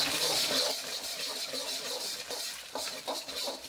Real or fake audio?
real